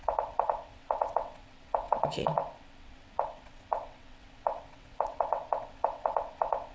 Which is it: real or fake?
fake